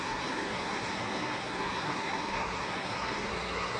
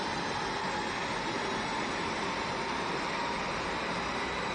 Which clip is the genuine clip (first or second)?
second